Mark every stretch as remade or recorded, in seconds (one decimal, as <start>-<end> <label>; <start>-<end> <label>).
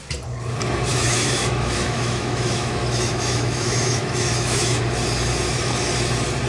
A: 0.0-0.9 recorded; 0.9-4.8 remade; 4.8-6.5 recorded